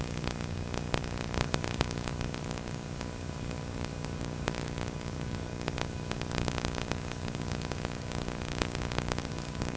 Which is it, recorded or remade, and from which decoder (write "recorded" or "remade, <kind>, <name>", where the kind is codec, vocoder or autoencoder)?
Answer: remade, codec, DAC